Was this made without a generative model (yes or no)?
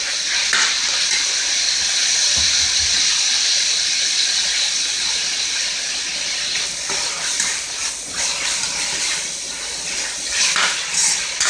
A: yes